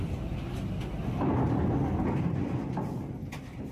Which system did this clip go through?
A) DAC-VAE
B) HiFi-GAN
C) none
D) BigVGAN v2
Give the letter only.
C